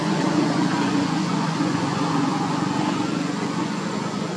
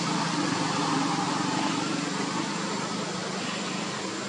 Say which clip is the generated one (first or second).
first